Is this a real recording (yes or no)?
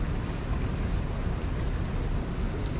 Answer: yes